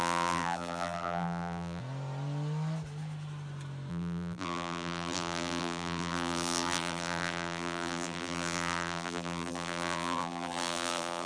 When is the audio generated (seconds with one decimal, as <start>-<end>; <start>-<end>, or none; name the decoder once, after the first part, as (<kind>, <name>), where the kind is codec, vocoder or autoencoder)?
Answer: 0.0-1.8 (vocoder, BigVGAN v2); 3.9-11.3